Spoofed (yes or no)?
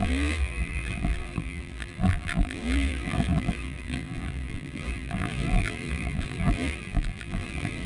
yes